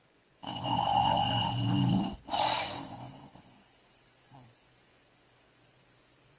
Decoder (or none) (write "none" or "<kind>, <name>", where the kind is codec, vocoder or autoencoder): vocoder, Vocos